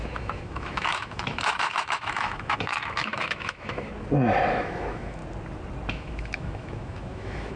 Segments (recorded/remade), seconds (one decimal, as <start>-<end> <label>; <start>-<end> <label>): 0.0-3.9 remade; 3.9-4.5 recorded; 4.5-5.2 remade; 5.2-5.9 recorded; 5.9-7.6 remade